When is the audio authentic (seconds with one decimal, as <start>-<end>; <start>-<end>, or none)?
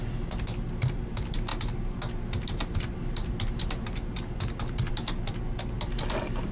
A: 0.0-6.5